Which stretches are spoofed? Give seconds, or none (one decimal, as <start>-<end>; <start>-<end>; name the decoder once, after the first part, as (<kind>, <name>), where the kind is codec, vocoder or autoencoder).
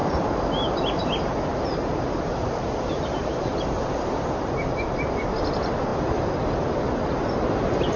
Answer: 0.0-0.8 (vocoder, BigVGAN v2); 1.5-4.1